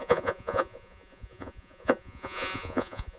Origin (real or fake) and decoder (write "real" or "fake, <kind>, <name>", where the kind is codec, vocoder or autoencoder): fake, vocoder, Vocos